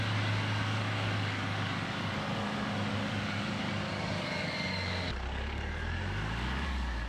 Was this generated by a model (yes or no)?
yes